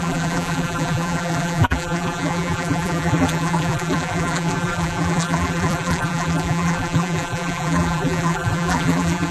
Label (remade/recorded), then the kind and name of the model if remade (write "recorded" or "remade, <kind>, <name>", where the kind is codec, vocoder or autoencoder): remade, vocoder, BigVGAN v2